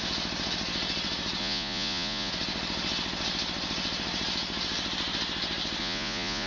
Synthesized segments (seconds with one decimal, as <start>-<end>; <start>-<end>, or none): 1.4-2.3; 5.8-6.5